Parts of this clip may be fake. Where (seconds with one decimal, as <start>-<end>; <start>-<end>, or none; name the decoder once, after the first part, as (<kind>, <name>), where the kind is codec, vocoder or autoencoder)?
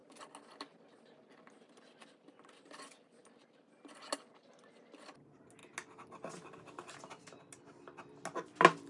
none